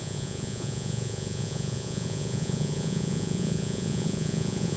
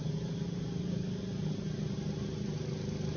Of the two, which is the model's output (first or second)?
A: first